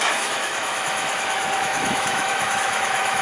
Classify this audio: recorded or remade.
remade